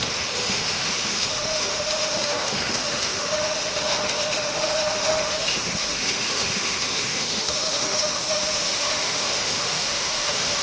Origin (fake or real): fake